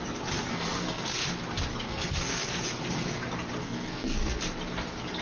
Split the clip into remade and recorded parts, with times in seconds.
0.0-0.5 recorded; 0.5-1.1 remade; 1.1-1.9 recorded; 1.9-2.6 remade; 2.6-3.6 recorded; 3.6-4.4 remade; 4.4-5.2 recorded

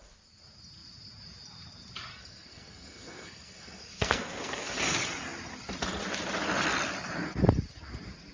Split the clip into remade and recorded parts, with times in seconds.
0.0-2.1 recorded; 2.1-4.8 remade; 4.8-8.3 recorded

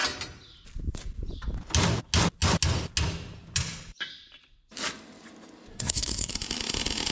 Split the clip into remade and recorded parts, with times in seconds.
0.0-5.7 recorded; 5.7-6.3 remade; 6.3-7.1 recorded

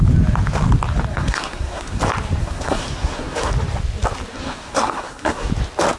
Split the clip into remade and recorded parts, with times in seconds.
0.0-1.1 recorded; 1.1-2.0 remade; 2.0-2.4 recorded; 2.4-3.5 remade; 3.5-4.3 recorded; 4.3-5.5 remade; 5.5-6.0 recorded

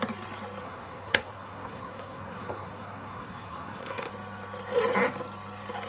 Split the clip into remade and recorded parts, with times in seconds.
0.0-0.6 recorded; 0.6-4.1 remade; 4.1-5.9 recorded